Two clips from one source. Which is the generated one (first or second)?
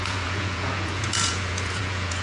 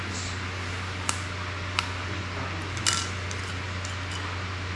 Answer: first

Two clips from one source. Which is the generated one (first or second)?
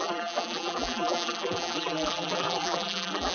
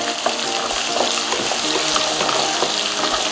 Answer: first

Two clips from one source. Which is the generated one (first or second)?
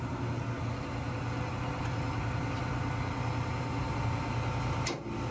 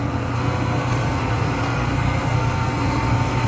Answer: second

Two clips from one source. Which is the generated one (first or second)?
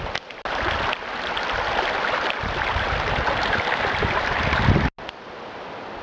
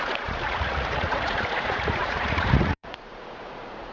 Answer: second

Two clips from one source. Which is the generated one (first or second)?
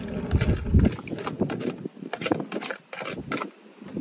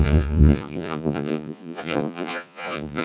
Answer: second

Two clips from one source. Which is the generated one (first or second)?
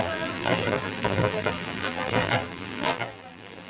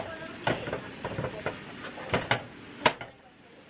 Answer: first